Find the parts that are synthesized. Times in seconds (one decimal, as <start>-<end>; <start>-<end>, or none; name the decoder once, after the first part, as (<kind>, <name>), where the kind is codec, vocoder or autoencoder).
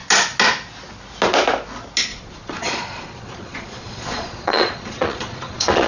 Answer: 2.1-5.9 (vocoder, Vocos)